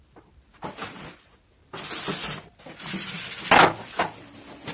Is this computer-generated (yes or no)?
no